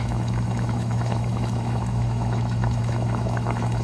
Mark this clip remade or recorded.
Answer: remade